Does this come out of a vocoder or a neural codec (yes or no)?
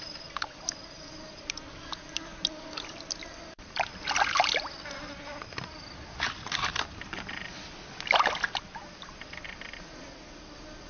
no